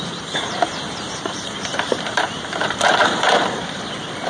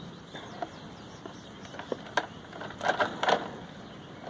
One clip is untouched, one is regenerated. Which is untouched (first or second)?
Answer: second